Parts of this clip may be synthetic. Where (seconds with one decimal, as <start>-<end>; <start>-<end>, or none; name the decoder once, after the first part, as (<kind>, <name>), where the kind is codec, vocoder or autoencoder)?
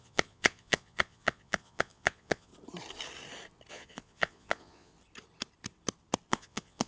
0.0-2.5 (vocoder, Vocos); 3.7-4.9; 6.3-6.9